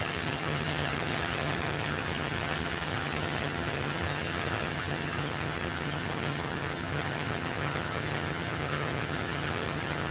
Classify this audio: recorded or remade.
remade